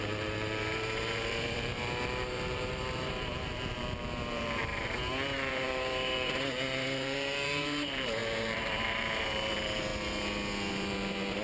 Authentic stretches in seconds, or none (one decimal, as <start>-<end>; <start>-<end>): 4.7-5.5; 9.9-10.7

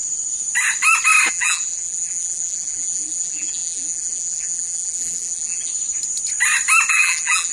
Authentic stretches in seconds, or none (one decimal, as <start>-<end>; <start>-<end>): 0.0-1.3; 5.7-6.9

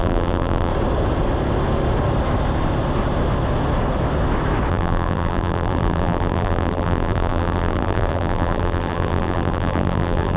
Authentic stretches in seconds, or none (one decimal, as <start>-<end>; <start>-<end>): 0.7-4.7

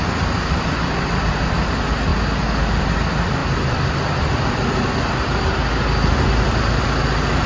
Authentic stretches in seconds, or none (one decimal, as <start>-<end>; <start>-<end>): 0.0-3.4; 6.6-7.5